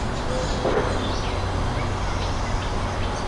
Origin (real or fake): real